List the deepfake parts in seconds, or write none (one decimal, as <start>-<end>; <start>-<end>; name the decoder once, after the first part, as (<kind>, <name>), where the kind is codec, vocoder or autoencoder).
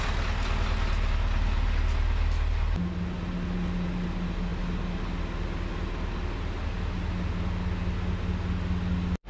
none